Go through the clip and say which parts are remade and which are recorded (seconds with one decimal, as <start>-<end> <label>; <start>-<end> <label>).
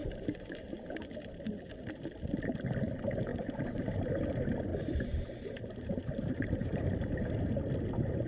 0.0-0.7 remade; 0.7-3.3 recorded; 3.3-4.2 remade; 4.2-4.7 recorded; 4.7-7.5 remade; 7.5-8.3 recorded